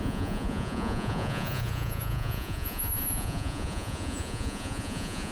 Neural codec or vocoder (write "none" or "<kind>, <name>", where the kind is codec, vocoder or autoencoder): vocoder, Vocos